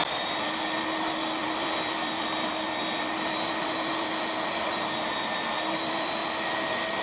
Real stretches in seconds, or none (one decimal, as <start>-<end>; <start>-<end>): 0.0-7.0